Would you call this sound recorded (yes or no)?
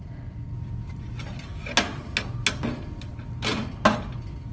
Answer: yes